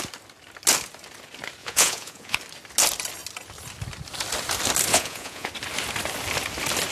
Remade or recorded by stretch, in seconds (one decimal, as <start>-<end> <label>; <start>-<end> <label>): 0.0-1.6 recorded; 1.6-2.4 remade; 2.4-4.9 recorded; 4.9-5.5 remade; 5.5-6.9 recorded